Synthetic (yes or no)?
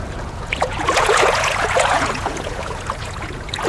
yes